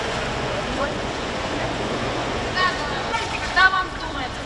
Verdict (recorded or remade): remade